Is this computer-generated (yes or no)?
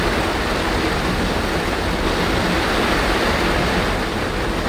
no